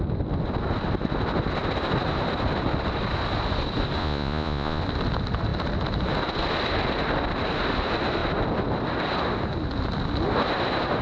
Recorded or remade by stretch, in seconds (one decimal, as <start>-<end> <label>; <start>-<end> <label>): 0.0-4.0 recorded; 4.0-4.8 remade; 4.8-11.0 recorded